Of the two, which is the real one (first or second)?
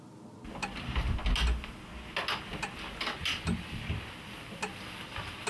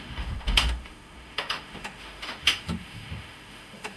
first